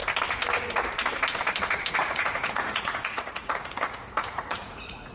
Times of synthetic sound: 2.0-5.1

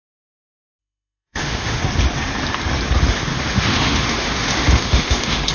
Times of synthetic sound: 0.8-1.8; 3.3-5.5

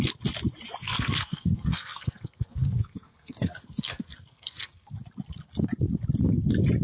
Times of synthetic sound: 0.8-4.9

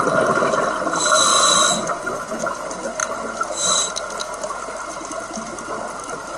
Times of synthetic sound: 1.3-2.4

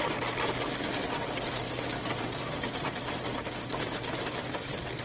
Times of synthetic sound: 2.0-5.0